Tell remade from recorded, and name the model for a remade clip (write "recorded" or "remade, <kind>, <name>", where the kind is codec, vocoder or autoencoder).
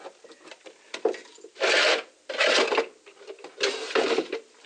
recorded